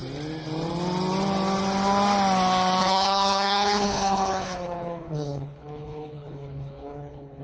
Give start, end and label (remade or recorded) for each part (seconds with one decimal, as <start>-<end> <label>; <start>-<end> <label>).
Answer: 0.0-2.8 recorded; 2.8-7.4 remade